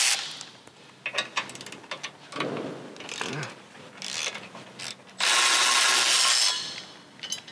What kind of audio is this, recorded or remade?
recorded